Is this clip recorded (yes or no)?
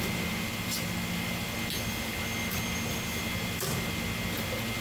yes